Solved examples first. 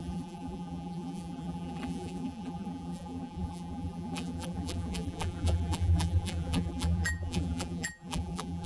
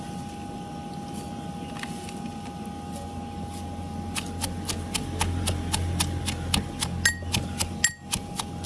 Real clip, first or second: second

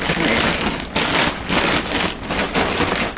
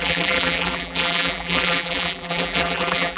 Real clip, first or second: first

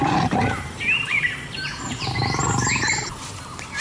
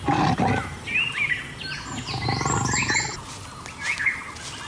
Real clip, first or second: second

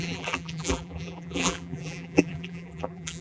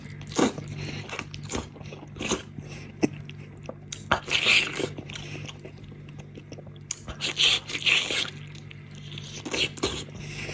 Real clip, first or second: second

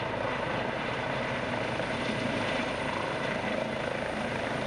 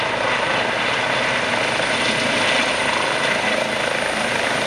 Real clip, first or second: second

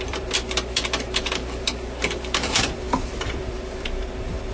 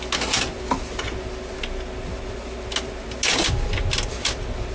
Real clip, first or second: second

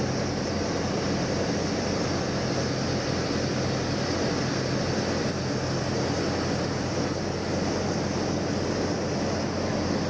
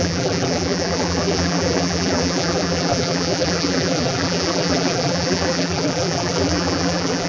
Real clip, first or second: first